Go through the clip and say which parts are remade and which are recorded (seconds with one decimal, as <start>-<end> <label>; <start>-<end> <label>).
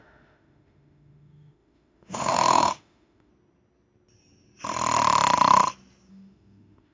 0.0-3.3 remade; 3.3-6.1 recorded; 6.1-6.9 remade